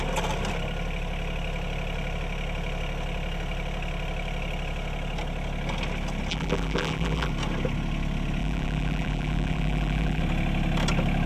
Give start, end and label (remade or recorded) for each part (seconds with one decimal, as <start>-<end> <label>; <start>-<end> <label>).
0.0-6.3 recorded; 6.3-7.3 remade; 7.3-8.4 recorded; 8.4-10.2 remade; 10.2-11.3 recorded